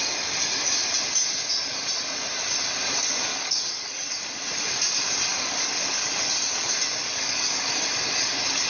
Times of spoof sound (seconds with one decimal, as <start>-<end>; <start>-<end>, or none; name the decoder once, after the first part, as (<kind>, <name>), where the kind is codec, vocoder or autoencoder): 3.3-4.3 (codec, DAC); 5.3-6.1; 7.0-8.7